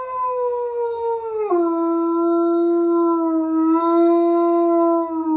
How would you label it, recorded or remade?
remade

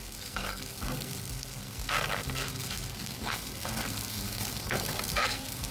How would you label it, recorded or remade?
remade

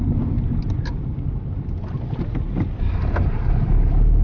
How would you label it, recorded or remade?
recorded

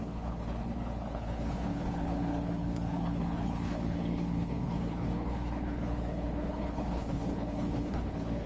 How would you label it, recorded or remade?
remade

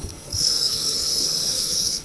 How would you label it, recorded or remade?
remade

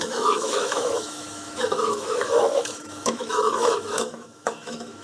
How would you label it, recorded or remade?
remade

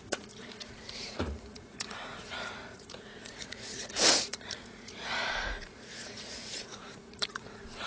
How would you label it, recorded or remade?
remade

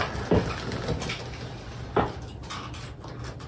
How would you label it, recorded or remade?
recorded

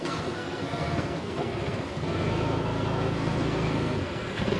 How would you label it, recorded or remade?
remade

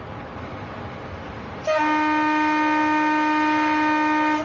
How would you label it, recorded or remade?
recorded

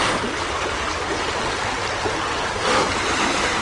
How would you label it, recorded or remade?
recorded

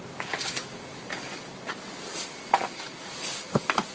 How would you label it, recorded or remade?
recorded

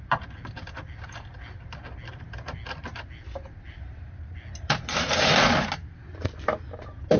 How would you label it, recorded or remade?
recorded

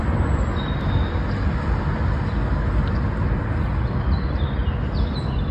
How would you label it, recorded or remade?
recorded